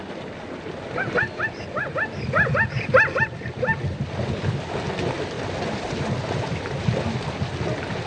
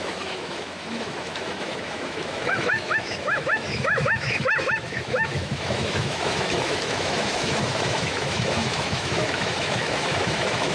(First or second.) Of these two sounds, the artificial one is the second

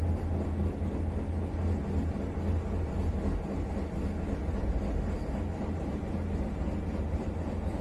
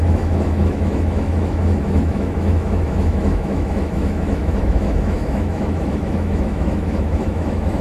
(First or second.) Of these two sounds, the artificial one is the second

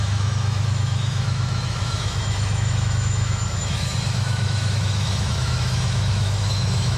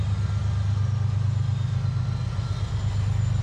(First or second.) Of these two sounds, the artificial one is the first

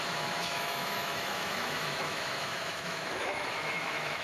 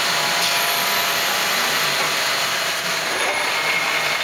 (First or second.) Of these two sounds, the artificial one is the first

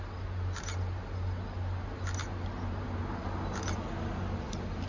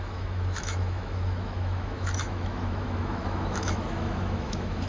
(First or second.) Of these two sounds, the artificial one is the second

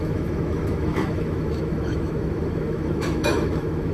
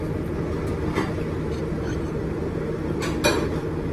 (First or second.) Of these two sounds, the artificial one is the first